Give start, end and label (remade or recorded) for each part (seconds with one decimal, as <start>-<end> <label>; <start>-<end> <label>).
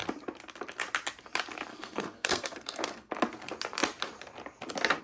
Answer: 0.0-1.7 recorded; 1.7-3.1 remade; 3.1-5.0 recorded